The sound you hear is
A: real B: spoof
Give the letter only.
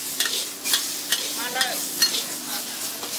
A